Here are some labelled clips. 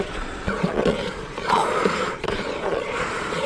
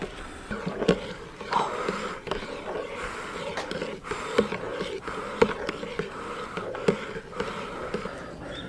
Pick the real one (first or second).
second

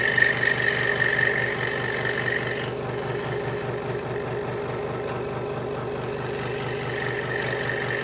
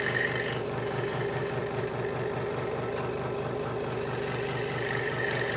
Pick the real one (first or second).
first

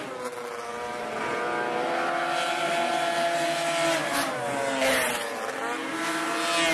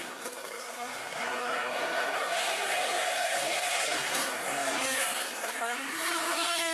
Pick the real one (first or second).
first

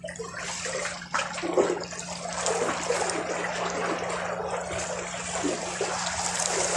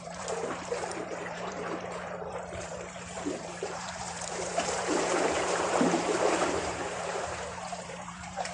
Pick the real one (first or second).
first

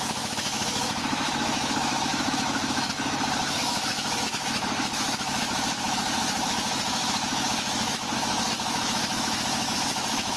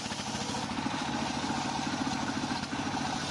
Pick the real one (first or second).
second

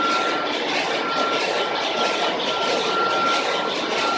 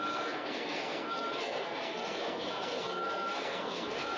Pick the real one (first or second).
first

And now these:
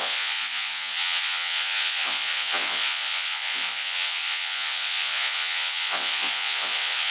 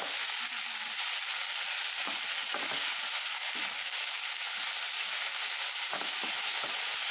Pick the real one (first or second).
second